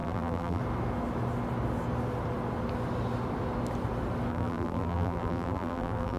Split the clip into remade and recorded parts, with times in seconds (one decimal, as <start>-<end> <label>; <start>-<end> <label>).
0.0-0.6 remade; 0.6-4.3 recorded; 4.3-6.2 remade